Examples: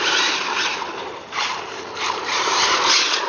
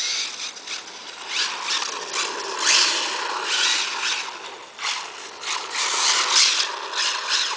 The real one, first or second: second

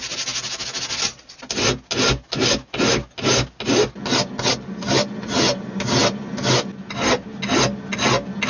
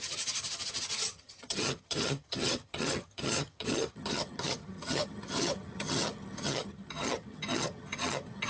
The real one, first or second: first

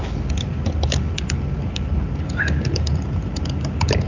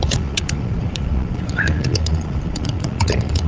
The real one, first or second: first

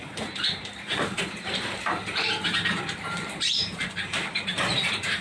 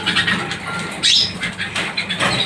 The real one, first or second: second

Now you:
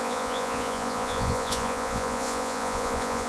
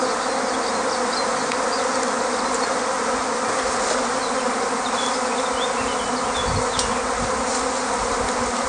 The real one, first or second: second